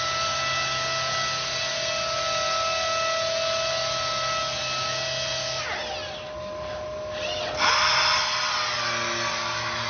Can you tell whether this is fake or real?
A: real